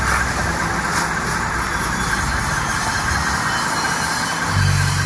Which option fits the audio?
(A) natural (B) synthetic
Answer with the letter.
A